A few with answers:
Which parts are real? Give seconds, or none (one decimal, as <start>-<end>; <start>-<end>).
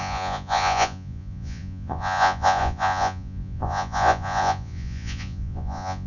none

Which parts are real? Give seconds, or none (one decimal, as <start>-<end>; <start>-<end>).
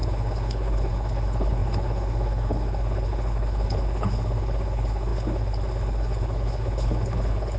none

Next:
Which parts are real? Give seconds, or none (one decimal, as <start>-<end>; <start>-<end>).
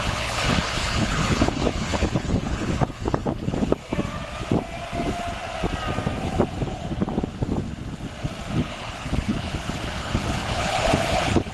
3.8-8.6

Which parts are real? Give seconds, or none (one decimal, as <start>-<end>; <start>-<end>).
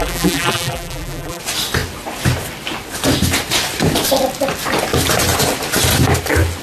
1.4-6.6